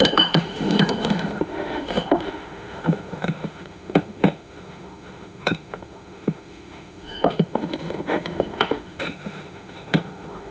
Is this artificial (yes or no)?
yes